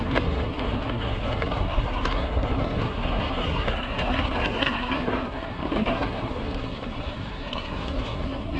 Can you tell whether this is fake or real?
fake